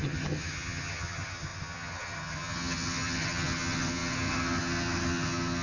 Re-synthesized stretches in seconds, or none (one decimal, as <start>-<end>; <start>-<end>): 0.0-5.6